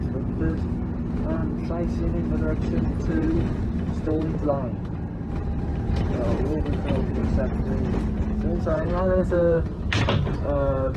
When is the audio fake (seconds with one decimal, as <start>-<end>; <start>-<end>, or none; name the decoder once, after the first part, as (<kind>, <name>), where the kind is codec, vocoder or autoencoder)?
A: 0.0-1.4 (vocoder, BigVGAN v2); 3.1-7.2; 8.6-11.0